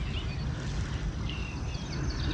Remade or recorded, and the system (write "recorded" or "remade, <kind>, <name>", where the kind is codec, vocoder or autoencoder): recorded